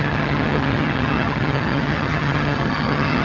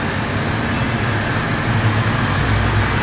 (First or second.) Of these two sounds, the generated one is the first